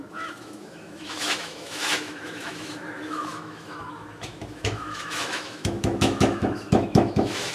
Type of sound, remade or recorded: remade